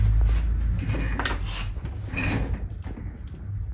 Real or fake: real